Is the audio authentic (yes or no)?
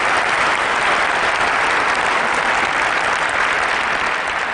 yes